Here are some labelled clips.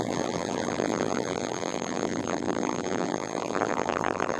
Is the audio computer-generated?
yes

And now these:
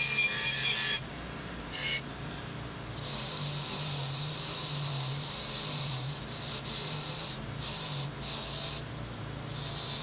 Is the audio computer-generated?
yes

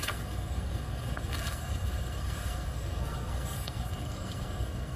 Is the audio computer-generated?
yes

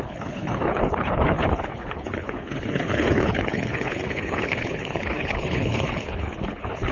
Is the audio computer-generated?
yes